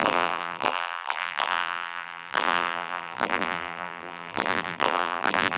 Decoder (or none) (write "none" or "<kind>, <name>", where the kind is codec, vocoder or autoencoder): vocoder, BigVGAN v2